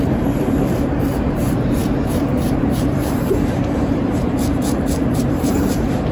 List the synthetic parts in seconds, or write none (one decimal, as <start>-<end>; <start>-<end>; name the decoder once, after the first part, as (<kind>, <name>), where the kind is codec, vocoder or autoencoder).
0.0-6.1 (vocoder, BigVGAN v2)